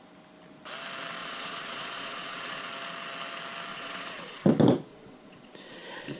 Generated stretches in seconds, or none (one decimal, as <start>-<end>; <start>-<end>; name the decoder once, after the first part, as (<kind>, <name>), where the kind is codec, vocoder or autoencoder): 1.2-2.7 (vocoder, Vocos); 3.7-4.5; 4.9-6.2